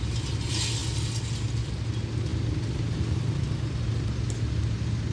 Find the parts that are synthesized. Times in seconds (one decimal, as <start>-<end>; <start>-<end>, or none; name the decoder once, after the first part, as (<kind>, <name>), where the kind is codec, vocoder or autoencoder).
none